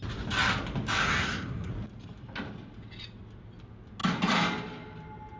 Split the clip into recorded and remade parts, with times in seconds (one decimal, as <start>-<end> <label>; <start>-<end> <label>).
0.0-1.0 recorded; 1.0-1.7 remade; 1.7-5.4 recorded